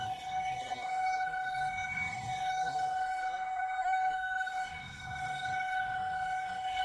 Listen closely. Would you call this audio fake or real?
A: fake